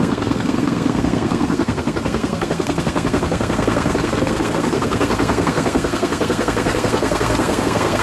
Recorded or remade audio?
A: remade